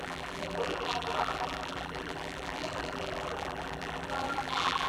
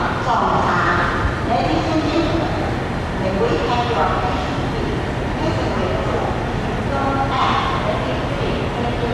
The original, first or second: second